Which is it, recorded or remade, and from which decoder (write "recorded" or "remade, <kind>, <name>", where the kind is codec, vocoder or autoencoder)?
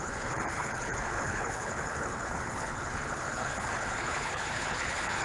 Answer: remade, codec, HILCodec